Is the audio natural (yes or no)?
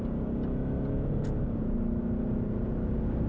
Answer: yes